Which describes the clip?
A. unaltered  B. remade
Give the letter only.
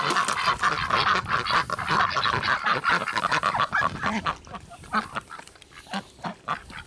A